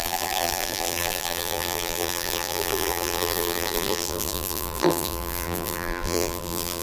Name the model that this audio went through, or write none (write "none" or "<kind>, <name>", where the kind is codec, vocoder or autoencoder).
vocoder, BigVGAN v2